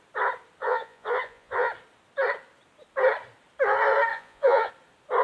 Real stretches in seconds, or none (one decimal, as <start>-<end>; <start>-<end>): 0.0-0.6; 1.7-4.1; 4.7-5.2